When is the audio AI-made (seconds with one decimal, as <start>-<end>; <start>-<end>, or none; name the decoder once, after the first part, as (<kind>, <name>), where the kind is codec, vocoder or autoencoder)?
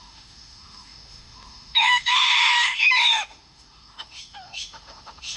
0.0-5.4 (autoencoder, DAC-VAE)